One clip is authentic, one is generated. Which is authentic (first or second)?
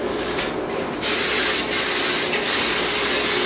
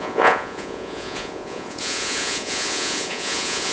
first